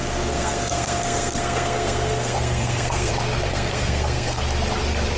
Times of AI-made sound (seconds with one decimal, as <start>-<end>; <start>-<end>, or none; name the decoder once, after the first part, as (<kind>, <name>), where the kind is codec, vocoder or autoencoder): 0.0-3.1 (codec, SNAC); 3.5-4.4